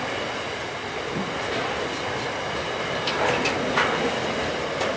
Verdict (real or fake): real